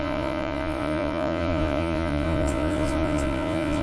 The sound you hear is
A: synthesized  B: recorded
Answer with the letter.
A